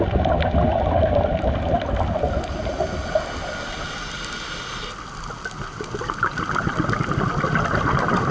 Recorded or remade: recorded